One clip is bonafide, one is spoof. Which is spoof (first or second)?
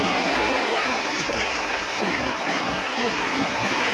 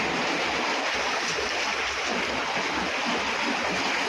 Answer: first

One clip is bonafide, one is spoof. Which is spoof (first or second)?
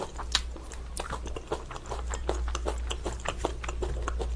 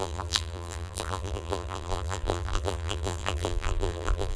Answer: second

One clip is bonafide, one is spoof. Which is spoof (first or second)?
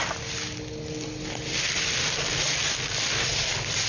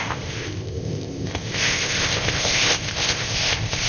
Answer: second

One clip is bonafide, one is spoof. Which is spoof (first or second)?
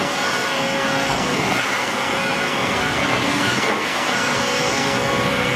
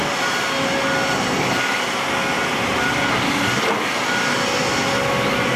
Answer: first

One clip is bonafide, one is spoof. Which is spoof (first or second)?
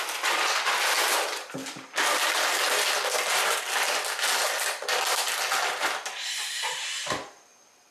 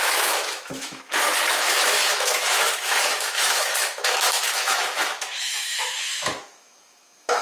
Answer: second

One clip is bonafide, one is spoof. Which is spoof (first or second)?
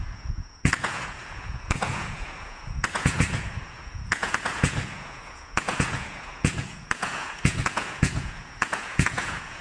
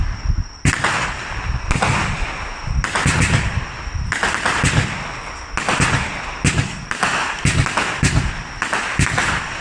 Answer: first